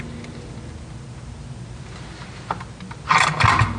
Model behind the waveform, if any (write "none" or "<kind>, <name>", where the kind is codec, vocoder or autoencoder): none